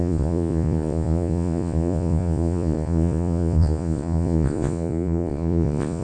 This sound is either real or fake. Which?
fake